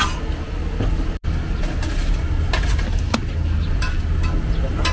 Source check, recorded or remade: recorded